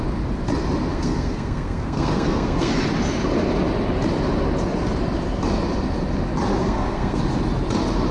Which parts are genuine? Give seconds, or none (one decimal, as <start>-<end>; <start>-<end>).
0.0-0.9; 2.7-6.6; 7.2-8.1

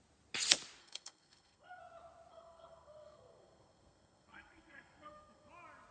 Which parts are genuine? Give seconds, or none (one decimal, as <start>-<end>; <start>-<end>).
0.0-0.8; 1.8-2.3; 5.5-5.9

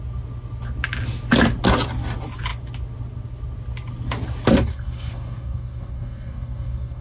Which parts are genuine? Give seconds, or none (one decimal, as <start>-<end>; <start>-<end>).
0.0-4.7

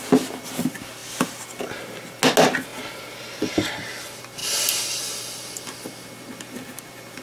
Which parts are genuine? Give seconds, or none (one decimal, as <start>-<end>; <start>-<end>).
0.0-7.2

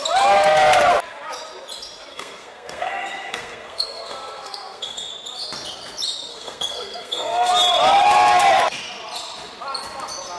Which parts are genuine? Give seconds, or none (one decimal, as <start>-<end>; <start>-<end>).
0.0-2.1; 5.1-6.3; 7.5-10.4

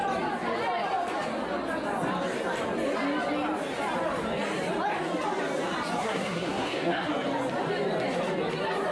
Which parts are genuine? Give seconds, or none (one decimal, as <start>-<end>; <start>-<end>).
0.0-6.0; 7.1-8.9

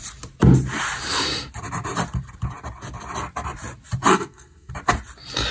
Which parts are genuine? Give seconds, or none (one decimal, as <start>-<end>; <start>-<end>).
0.0-4.1; 4.7-5.5